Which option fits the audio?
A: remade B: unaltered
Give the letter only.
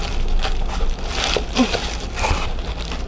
A